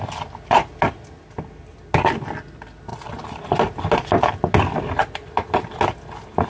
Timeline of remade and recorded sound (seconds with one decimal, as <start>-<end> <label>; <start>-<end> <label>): 0.0-6.5 recorded